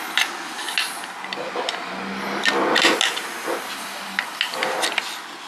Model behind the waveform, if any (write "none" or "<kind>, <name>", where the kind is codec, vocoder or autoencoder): none